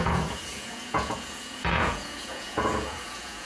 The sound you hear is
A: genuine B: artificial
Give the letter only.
B